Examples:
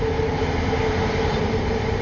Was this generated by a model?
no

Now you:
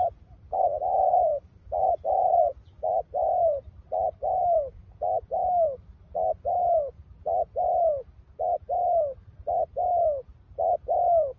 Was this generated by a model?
no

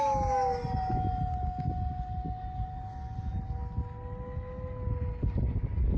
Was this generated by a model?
no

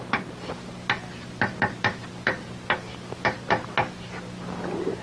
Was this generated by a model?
no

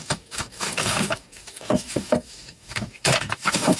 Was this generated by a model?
yes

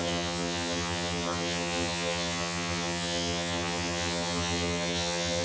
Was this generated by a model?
yes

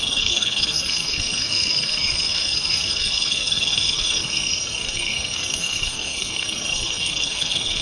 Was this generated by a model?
yes